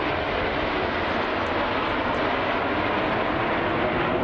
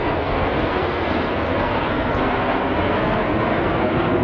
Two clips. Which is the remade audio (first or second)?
second